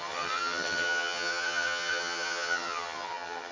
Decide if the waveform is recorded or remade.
remade